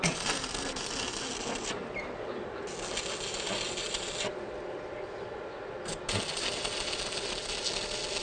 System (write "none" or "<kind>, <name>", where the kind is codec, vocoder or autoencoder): none